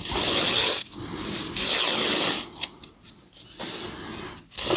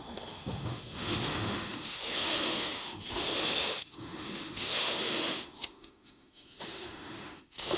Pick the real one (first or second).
first